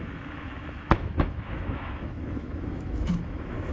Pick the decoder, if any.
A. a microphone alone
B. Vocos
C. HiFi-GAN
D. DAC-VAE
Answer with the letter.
D